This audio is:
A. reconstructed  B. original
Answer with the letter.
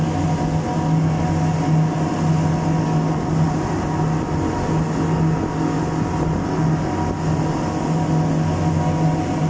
B